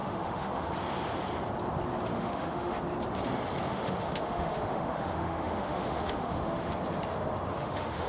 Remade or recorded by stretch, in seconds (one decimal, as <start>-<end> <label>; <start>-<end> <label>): 0.0-0.7 remade; 0.7-2.1 recorded; 2.1-2.8 remade; 2.8-3.7 recorded; 3.7-6.7 remade; 6.7-7.5 recorded; 7.5-8.1 remade